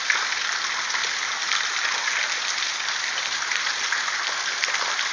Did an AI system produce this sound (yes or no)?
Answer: no